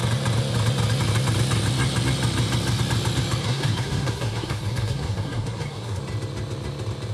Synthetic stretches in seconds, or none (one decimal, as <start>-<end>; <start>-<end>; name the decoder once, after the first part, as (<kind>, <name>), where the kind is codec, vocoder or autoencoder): 3.4-6.0 (codec, SNAC)